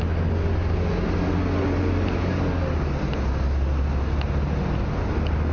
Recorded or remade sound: recorded